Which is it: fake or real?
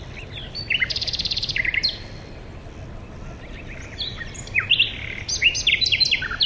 real